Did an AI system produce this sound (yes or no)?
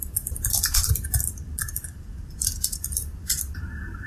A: yes